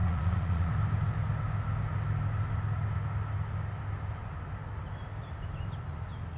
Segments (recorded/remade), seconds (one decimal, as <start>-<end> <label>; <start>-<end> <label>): 0.0-0.7 remade; 0.7-6.4 recorded